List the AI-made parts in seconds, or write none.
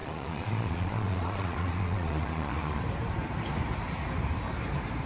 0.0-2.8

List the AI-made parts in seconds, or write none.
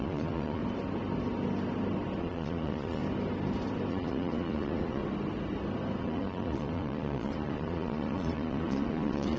0.0-0.6; 2.2-3.0; 3.9-5.0; 6.0-9.4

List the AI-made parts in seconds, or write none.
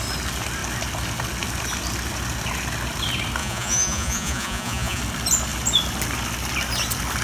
3.4-5.0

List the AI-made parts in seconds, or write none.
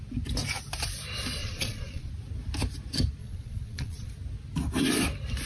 1.4-2.1; 3.2-4.1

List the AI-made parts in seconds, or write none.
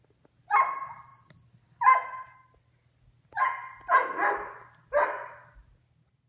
none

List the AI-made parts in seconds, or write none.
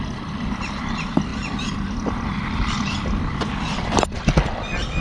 none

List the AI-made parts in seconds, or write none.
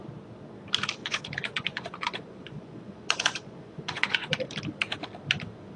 1.0-4.5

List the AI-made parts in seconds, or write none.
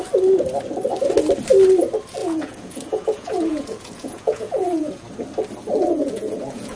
2.2-5.1; 5.9-6.8